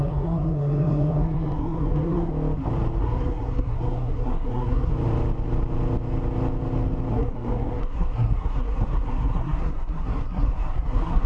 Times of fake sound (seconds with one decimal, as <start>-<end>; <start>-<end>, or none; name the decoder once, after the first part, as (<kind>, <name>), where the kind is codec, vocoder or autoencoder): 0.0-2.3 (codec, SNAC); 3.0-4.9; 7.1-11.3